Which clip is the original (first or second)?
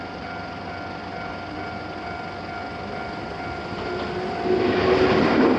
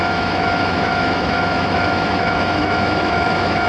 first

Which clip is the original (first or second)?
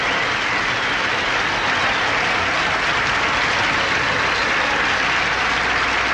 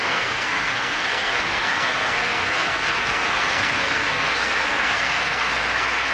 first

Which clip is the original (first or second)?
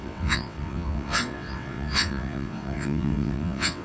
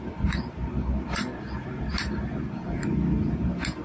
second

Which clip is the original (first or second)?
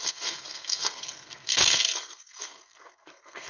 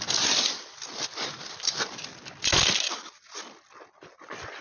second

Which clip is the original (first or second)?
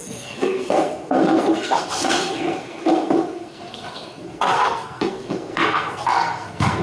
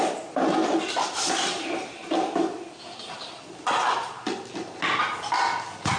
second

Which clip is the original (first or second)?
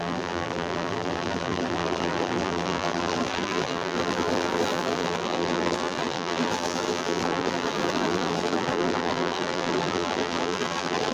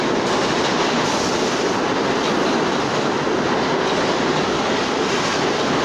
second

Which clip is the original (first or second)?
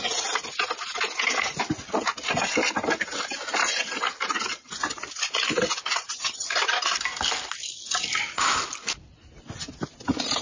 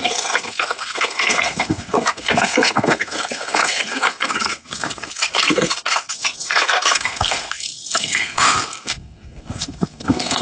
first